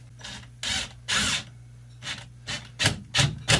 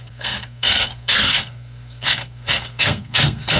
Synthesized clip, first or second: second